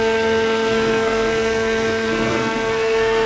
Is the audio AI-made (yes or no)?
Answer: yes